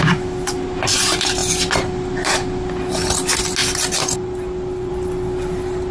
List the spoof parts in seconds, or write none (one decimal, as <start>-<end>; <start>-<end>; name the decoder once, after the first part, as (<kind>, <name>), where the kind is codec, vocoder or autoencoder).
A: none